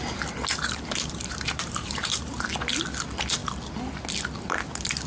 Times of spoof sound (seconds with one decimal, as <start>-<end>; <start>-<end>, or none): 0.5-2.5